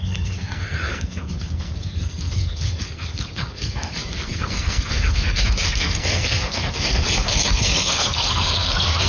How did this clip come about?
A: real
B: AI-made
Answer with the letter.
B